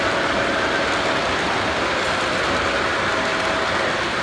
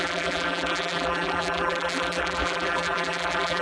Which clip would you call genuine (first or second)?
first